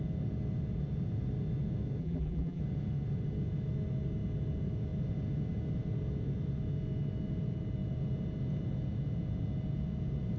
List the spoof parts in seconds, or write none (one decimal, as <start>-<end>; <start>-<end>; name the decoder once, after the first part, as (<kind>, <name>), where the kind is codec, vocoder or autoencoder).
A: 2.0-2.6 (vocoder, BigVGAN v2)